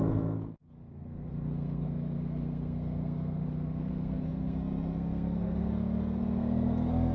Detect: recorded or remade remade